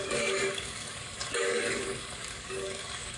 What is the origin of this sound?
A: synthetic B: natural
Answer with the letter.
A